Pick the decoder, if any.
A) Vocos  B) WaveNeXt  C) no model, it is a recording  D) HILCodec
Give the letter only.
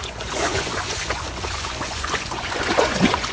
A